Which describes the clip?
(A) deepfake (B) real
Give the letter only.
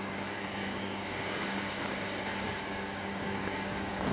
A